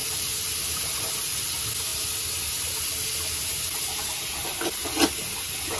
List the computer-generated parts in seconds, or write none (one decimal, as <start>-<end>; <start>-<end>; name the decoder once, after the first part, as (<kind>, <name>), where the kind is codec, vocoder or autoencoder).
none